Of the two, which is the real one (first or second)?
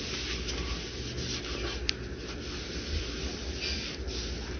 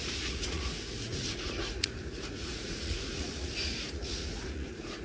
first